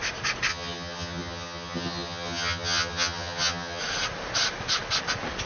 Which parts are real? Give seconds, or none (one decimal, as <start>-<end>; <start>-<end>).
0.0-0.5; 3.8-5.5